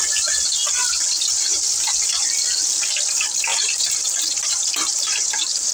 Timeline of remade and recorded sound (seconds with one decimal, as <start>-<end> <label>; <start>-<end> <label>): 0.0-3.5 recorded; 3.5-5.7 remade